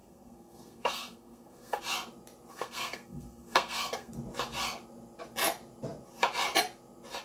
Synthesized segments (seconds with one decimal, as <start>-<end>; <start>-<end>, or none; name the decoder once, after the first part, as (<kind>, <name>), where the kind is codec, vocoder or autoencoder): 0.0-1.8 (codec, SNAC); 2.5-4.1